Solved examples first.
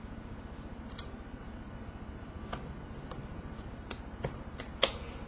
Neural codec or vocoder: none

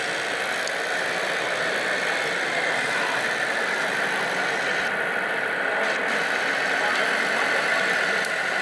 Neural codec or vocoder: none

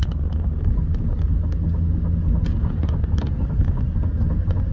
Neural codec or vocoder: none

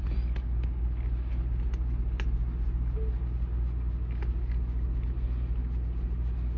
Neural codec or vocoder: none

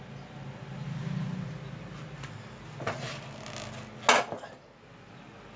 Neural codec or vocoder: none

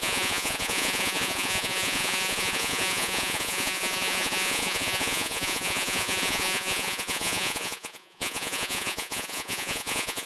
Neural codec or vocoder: vocoder, Vocos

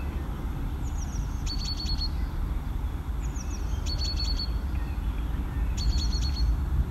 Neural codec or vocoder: none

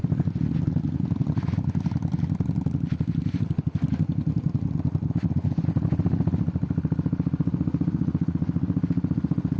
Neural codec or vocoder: none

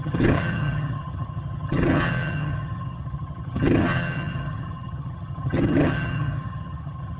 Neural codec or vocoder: vocoder, HiFi-GAN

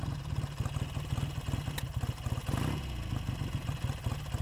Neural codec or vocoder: none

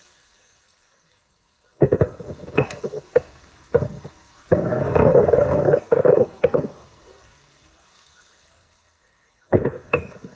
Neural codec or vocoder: codec, SNAC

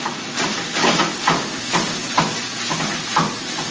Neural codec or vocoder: none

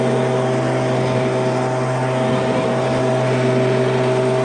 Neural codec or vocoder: none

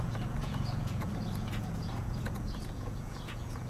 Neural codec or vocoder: vocoder, Vocos